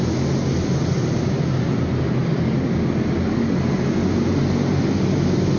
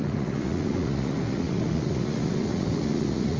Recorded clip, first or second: first